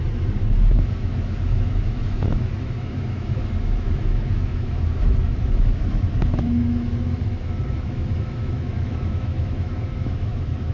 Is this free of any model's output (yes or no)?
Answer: no